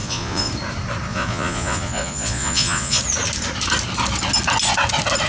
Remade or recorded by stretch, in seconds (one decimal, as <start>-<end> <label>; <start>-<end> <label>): 0.0-0.5 remade; 0.5-1.1 recorded; 1.1-3.0 remade; 3.0-5.3 recorded